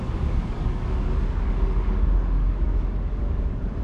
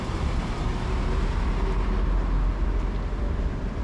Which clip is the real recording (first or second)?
second